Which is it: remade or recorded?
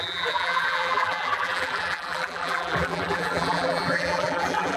remade